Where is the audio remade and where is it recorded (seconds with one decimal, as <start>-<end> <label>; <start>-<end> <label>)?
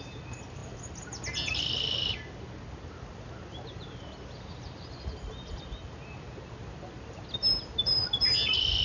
0.0-8.8 recorded